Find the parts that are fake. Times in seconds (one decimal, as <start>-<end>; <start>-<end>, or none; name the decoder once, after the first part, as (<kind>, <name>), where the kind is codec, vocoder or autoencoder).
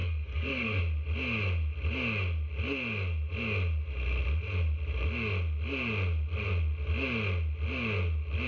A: 0.0-0.8 (codec, SNAC)